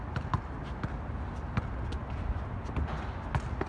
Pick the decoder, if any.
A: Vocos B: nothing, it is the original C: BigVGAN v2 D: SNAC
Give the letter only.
B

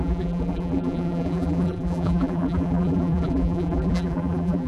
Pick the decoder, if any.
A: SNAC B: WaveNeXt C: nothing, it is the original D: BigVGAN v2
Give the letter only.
D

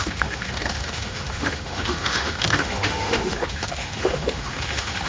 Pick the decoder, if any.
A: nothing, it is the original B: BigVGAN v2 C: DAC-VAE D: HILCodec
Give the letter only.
C